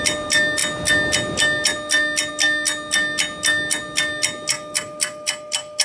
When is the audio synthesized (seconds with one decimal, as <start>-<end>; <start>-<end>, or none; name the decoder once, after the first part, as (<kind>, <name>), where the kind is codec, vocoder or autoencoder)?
none

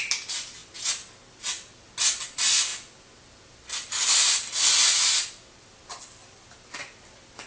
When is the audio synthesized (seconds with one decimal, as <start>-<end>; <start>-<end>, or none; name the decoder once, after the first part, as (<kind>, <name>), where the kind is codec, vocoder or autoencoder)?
none

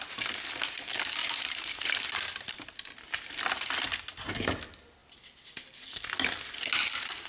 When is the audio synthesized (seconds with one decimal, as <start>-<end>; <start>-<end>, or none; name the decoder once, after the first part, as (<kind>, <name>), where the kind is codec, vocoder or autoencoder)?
1.2-1.9 (vocoder, BigVGAN v2)

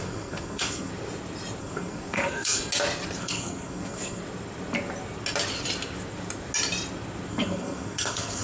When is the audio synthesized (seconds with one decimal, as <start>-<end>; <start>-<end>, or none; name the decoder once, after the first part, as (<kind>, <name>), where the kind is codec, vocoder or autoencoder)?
0.0-0.9 (codec, SNAC); 1.6-2.6; 3.2-4.2; 7.3-8.4

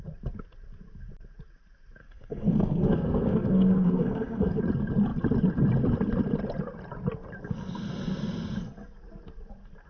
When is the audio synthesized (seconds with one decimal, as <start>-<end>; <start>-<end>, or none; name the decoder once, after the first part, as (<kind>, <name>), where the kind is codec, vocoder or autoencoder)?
2.0-4.6 (codec, SNAC)

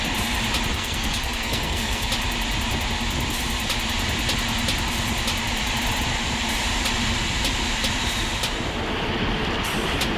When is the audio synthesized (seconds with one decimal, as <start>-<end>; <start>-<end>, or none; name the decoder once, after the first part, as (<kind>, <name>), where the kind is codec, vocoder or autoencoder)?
0.7-2.1 (codec, SNAC)

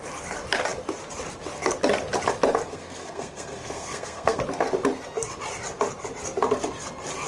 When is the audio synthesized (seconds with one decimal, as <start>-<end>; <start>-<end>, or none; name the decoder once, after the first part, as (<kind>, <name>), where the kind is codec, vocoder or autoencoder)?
2.7-4.4 (codec, SNAC)

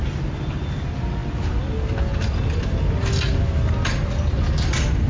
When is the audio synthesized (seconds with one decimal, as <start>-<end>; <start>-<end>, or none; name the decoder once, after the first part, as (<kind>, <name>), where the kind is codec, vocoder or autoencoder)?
none